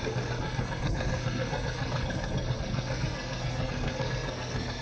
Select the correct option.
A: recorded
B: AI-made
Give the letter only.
B